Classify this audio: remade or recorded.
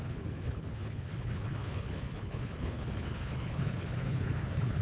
remade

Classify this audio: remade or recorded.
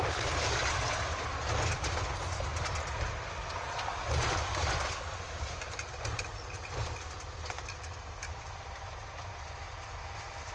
recorded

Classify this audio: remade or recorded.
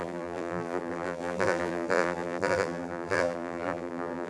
remade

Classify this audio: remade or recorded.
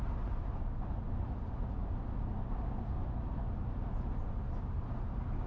recorded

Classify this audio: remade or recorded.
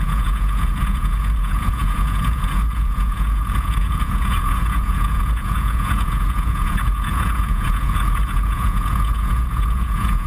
remade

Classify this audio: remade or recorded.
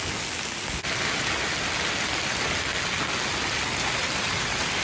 recorded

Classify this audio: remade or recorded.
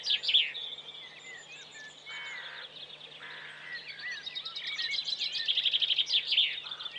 recorded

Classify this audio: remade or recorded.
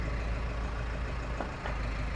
recorded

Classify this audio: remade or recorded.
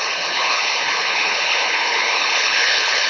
remade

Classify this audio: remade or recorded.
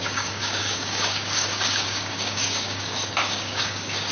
remade